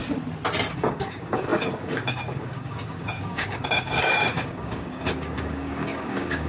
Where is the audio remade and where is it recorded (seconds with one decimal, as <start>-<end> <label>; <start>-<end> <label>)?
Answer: 0.0-0.7 recorded; 0.7-6.5 remade